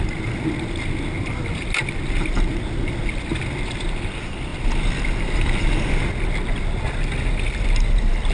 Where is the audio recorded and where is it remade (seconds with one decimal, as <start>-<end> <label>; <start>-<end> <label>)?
0.0-8.3 recorded